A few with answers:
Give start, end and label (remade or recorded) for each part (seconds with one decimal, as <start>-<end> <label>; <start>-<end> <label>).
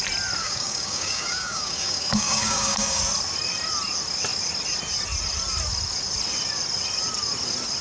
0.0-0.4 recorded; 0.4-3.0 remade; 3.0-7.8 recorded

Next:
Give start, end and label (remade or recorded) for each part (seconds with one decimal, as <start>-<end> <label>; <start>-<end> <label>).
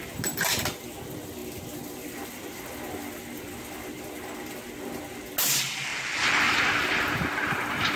0.0-8.0 recorded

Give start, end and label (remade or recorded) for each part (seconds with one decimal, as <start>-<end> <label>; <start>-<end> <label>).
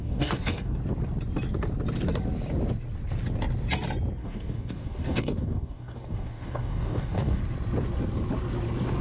0.0-0.8 remade; 0.8-4.2 recorded; 4.2-7.4 remade; 7.4-9.0 recorded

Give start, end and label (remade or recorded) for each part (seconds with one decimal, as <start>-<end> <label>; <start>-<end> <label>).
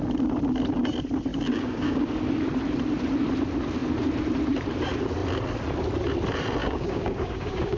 0.0-1.3 recorded; 1.3-2.0 remade; 2.0-6.6 recorded; 6.6-7.8 remade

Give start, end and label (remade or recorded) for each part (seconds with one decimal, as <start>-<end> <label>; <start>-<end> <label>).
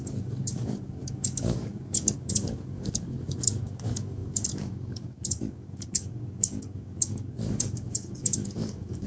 0.0-9.1 remade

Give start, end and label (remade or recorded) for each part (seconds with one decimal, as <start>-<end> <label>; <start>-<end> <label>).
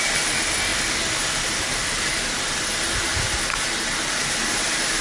0.0-5.0 recorded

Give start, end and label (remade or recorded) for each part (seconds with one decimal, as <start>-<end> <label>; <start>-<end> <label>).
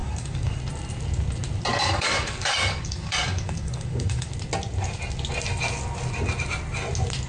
0.0-0.6 remade; 0.6-1.7 recorded; 1.7-4.3 remade; 4.3-7.3 recorded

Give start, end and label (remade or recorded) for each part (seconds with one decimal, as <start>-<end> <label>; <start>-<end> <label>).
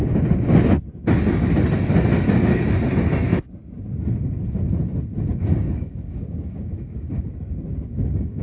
0.0-5.3 recorded; 5.3-7.1 remade; 7.1-7.7 recorded; 7.7-8.4 remade